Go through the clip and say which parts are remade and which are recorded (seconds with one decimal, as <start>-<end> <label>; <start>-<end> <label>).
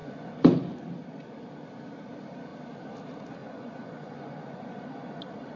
0.0-0.6 remade; 0.6-3.4 recorded; 3.4-4.8 remade; 4.8-5.6 recorded